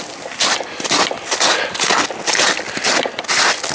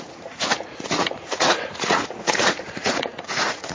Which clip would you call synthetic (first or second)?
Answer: second